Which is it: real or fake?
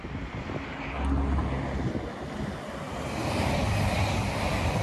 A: real